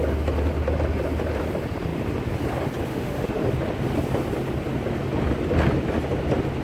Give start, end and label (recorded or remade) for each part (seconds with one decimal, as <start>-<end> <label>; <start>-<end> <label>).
0.0-2.9 recorded; 2.9-3.4 remade; 3.4-6.6 recorded